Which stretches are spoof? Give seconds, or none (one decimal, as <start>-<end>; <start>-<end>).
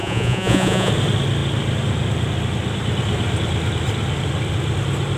0.0-0.9